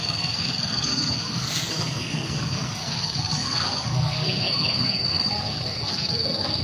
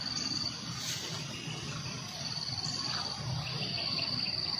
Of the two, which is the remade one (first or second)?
first